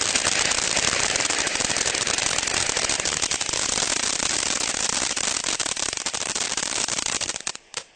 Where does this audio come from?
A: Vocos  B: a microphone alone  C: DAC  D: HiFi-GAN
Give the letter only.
B